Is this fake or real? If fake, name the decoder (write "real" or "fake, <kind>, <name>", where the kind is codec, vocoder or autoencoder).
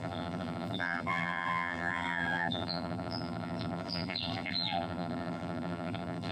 fake, vocoder, BigVGAN v2